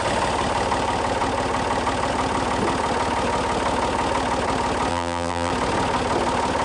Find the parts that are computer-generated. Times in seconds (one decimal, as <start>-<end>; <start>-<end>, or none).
4.9-5.5